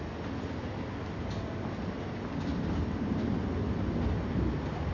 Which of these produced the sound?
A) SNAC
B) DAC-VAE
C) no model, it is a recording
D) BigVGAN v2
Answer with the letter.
C